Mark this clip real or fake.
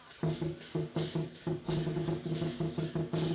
fake